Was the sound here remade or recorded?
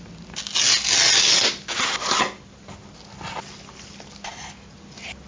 recorded